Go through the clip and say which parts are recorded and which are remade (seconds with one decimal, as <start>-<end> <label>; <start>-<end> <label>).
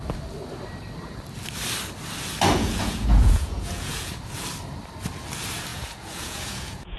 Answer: 0.0-2.5 recorded; 2.5-4.1 remade; 4.1-5.7 recorded; 5.7-7.0 remade